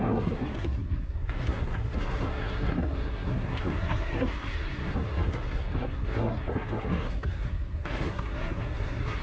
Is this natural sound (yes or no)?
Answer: no